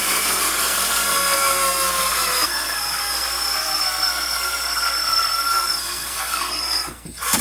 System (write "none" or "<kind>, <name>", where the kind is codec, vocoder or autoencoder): codec, SNAC